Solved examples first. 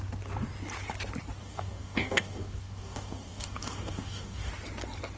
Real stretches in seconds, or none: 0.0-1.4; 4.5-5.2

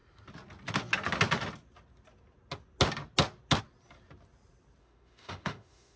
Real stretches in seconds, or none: 0.0-4.8

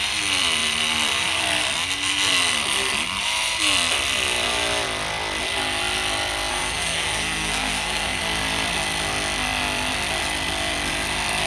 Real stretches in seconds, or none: 0.0-6.5; 8.2-11.5

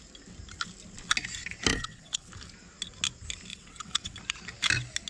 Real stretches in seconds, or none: 0.0-1.7; 2.3-3.5; 4.2-5.1

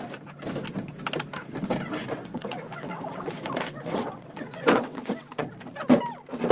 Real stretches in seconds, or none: 0.0-2.0; 5.5-6.5

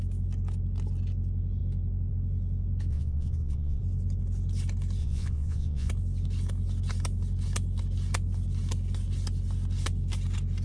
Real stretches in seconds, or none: 0.0-2.9; 3.8-5.0; 5.9-10.6